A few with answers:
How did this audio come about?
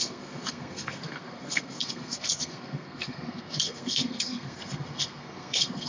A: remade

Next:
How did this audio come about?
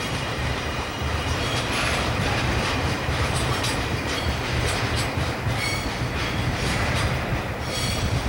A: remade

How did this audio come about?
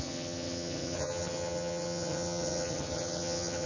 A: remade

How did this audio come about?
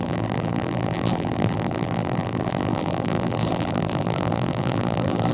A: remade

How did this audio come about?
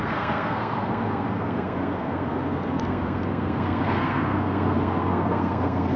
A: remade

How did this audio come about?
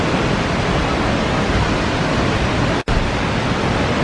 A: recorded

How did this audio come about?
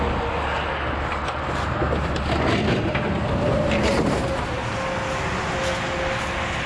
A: recorded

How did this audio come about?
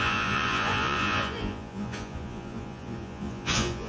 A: remade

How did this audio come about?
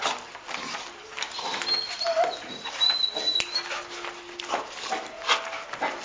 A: recorded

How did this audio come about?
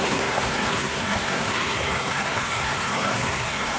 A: remade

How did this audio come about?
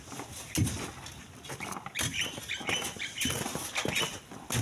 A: recorded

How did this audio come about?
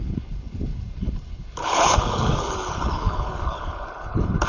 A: remade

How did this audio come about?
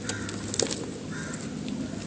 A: recorded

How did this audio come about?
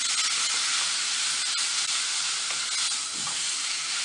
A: recorded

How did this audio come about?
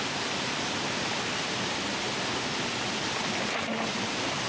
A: recorded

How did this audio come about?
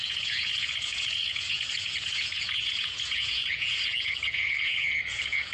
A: remade